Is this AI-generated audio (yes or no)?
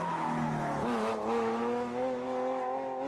yes